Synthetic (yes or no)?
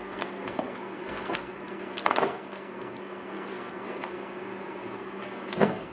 yes